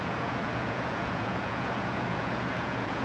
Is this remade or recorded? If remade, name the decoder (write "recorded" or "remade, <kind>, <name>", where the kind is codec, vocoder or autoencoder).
remade, vocoder, Vocos